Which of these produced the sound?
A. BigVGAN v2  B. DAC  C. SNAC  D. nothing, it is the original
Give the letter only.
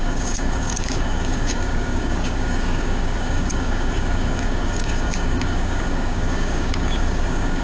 B